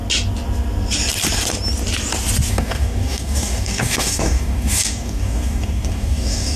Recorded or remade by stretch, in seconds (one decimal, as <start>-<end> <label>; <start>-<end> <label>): 0.0-2.5 recorded; 2.5-6.6 remade